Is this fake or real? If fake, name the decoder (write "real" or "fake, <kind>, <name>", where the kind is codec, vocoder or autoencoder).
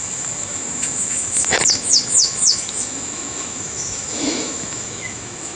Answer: fake, autoencoder, DAC-VAE